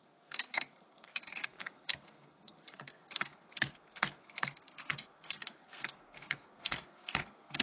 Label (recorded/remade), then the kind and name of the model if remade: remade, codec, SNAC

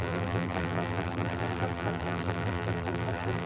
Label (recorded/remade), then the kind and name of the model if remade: remade, vocoder, BigVGAN v2